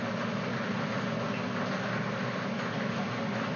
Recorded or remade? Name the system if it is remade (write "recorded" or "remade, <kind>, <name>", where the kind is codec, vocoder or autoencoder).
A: recorded